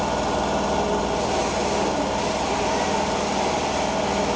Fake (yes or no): no